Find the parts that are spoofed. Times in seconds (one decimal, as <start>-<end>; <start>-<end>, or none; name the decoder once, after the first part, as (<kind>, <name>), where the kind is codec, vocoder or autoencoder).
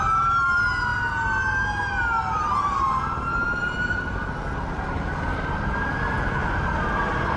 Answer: none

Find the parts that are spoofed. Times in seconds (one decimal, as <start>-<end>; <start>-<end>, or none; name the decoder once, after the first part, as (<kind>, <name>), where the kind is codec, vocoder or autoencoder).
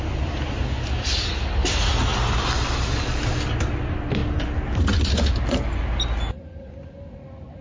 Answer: none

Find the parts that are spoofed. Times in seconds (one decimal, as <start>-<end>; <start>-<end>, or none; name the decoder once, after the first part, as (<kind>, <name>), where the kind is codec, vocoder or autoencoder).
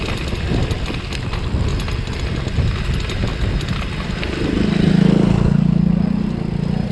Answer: none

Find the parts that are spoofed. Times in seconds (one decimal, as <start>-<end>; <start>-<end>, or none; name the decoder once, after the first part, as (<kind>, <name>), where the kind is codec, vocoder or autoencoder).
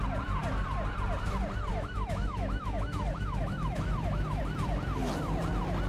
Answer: 1.7-4.4 (autoencoder, DAC-VAE)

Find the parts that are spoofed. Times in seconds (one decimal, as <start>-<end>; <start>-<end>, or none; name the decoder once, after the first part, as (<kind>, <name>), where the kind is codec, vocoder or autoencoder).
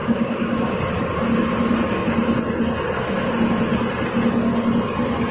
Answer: 0.0-0.8 (autoencoder, DAC-VAE)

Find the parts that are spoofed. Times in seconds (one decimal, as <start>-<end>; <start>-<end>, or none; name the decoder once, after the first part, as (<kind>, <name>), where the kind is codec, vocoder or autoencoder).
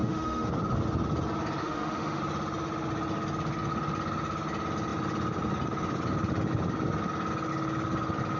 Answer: 0.0-0.5 (autoencoder, DAC-VAE); 1.6-2.2